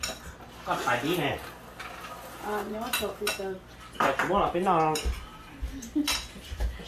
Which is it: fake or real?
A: real